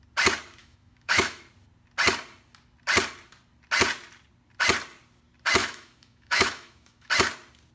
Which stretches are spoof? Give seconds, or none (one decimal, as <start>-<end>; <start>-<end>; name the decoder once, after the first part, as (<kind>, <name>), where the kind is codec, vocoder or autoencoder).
0.6-1.4 (autoencoder, DAC-VAE); 5.6-7.1